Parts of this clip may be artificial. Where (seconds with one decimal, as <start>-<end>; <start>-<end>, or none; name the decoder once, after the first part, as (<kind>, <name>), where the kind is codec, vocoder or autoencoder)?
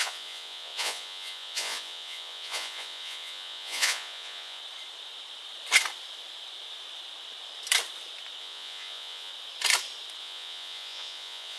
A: 0.0-4.6 (vocoder, Vocos); 8.4-9.3; 10.2-11.6